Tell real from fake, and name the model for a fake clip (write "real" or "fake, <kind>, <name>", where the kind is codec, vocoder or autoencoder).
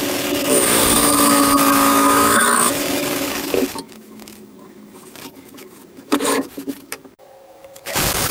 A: fake, codec, DAC